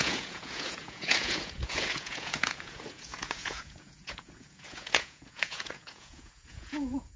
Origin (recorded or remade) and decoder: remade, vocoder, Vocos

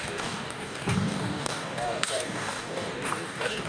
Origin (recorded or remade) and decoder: remade, codec, DAC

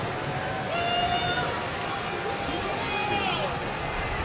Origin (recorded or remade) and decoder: recorded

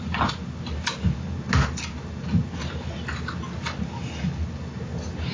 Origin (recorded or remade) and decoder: recorded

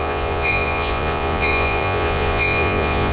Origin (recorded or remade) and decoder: remade, vocoder, Vocos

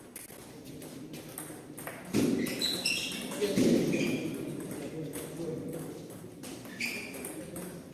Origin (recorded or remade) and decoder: recorded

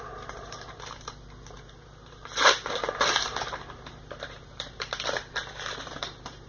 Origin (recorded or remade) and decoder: remade, vocoder, BigVGAN v2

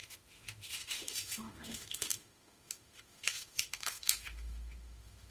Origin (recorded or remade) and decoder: remade, autoencoder, DAC-VAE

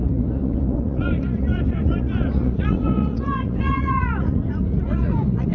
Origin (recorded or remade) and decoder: remade, vocoder, Vocos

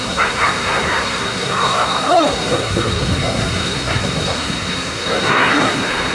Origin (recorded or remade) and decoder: remade, codec, SNAC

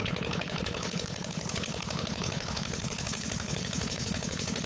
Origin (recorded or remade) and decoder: remade, codec, HILCodec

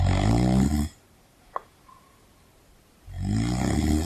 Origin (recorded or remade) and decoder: recorded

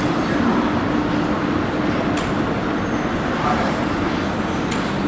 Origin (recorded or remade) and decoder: recorded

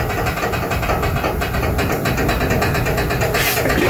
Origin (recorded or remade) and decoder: recorded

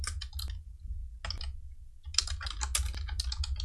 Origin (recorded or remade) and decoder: recorded